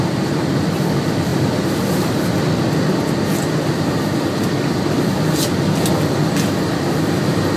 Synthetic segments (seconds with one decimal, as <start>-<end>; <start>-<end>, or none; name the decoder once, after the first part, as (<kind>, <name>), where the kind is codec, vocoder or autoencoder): none